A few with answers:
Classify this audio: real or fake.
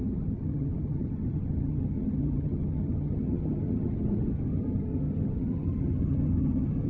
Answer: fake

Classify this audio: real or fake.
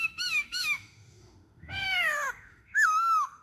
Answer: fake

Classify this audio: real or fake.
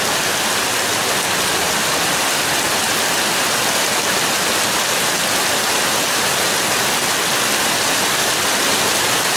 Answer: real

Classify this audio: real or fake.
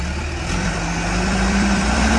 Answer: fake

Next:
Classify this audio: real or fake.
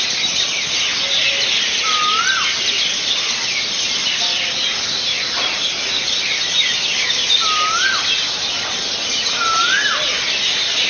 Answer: real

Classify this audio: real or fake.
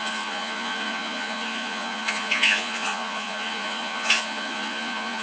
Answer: fake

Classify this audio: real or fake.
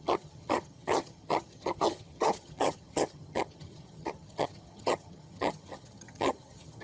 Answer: fake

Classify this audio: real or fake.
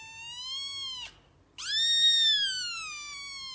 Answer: real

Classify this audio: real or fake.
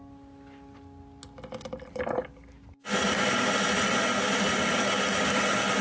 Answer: real